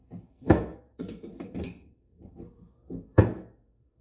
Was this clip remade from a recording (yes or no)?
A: yes